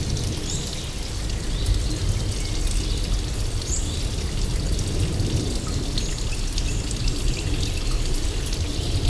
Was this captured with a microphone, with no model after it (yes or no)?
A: yes